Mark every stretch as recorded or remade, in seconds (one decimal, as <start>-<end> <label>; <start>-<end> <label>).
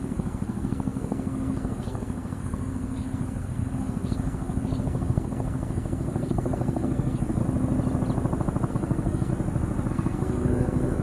0.0-7.4 remade; 7.4-8.7 recorded; 8.7-9.3 remade; 9.3-9.9 recorded; 9.9-11.0 remade